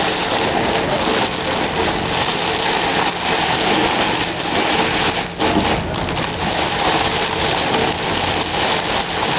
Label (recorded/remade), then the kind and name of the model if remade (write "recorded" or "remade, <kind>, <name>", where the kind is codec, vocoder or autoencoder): recorded